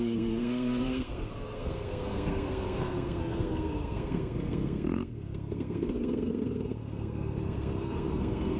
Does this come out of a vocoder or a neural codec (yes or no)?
yes